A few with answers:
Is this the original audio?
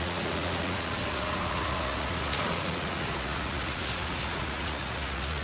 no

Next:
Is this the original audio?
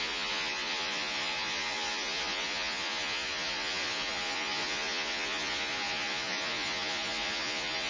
no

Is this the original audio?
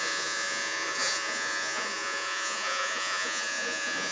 no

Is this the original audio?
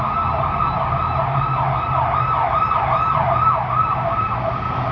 yes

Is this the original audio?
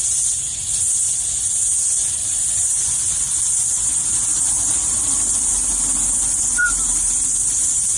yes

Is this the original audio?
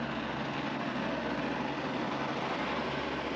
yes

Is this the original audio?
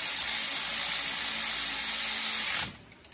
yes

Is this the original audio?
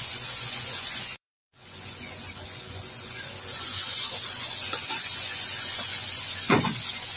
no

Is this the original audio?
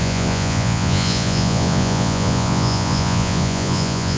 no